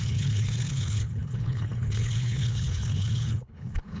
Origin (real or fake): fake